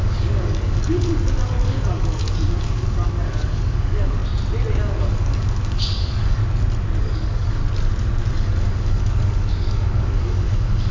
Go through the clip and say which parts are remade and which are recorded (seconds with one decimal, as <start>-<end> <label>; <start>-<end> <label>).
0.0-4.2 remade; 4.2-4.8 recorded; 4.8-6.4 remade; 6.4-7.0 recorded; 7.0-7.6 remade; 7.6-8.3 recorded; 8.3-10.9 remade